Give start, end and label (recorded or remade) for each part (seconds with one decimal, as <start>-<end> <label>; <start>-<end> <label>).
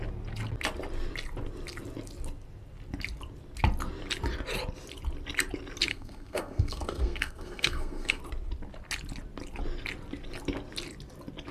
0.0-5.9 recorded; 5.9-8.2 remade; 8.2-11.5 recorded